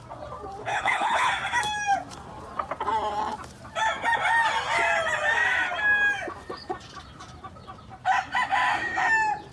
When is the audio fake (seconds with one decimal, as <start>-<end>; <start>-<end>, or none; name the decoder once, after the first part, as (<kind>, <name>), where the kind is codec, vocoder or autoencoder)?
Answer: 0.6-1.3 (codec, HILCodec)